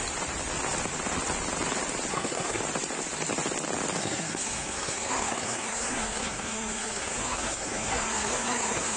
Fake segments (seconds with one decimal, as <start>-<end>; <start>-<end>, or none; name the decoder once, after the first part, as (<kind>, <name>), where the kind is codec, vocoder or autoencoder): 2.1-2.6 (codec, SNAC); 4.0-9.0